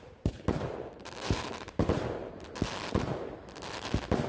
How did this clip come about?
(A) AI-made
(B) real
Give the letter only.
B